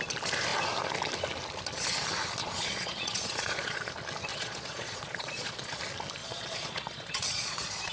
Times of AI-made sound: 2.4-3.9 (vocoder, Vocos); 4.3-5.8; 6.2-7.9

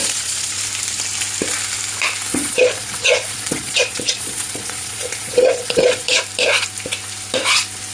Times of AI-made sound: 0.0-0.6 (vocoder, Vocos); 2.3-6.2

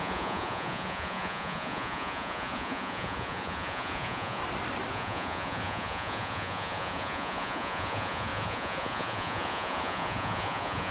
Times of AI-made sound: 0.0-4.4 (vocoder, Vocos); 4.9-10.9

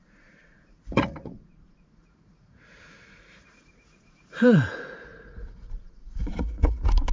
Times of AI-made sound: 0.0-7.1 (vocoder, Vocos)

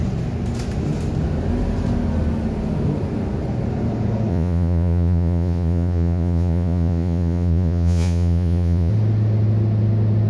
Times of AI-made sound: 4.3-8.9 (vocoder, Vocos)

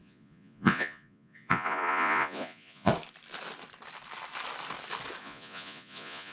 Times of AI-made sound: 0.0-2.9 (vocoder, Vocos); 5.2-6.3